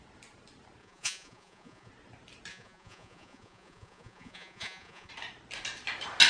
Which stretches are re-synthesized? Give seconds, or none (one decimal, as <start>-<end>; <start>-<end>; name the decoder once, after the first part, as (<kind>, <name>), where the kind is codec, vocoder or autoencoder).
0.8-1.9 (vocoder, Vocos); 2.5-5.1